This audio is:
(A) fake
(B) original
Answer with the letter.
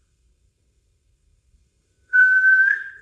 A